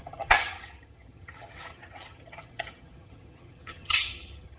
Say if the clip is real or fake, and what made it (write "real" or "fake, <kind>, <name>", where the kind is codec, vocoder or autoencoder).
fake, vocoder, HiFi-GAN